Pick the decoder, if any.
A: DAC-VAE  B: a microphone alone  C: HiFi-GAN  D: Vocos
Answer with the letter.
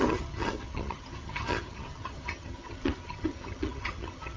C